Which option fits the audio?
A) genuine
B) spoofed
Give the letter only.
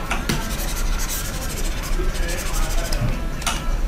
A